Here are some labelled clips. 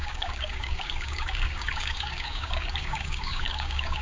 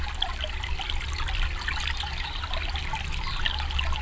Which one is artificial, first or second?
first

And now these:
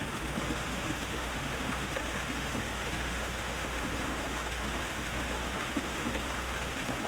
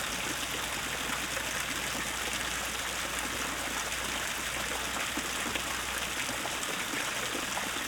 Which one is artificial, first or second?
first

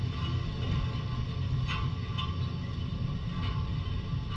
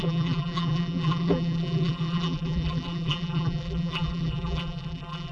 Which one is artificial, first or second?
second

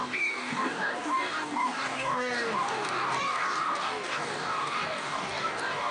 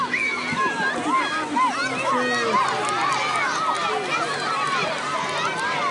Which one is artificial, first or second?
first